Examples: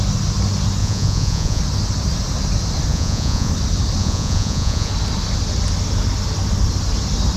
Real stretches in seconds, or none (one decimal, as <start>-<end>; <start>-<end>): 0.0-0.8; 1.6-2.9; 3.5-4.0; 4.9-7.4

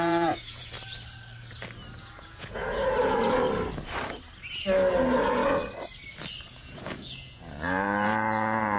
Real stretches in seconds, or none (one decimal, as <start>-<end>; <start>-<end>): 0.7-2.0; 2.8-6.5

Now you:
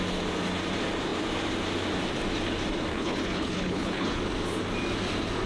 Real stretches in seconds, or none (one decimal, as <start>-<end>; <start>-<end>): 0.0-2.9; 4.2-5.5

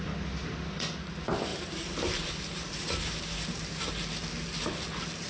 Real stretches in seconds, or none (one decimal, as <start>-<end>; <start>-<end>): 0.0-1.5; 3.9-5.3

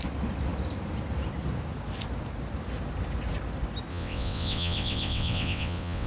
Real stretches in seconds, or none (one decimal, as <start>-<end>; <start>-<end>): 0.0-3.9